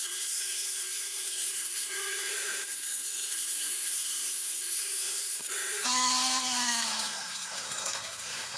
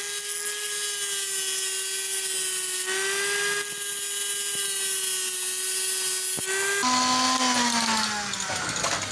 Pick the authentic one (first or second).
second